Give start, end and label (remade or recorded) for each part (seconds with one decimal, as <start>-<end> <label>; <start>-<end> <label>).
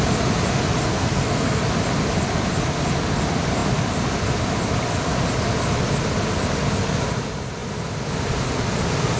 0.0-0.9 recorded; 0.9-1.6 remade; 1.6-9.2 recorded